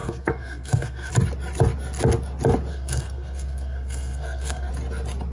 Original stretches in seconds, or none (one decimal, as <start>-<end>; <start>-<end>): 1.1-2.7; 4.7-5.3